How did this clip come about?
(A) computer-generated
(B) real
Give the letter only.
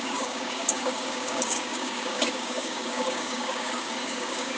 A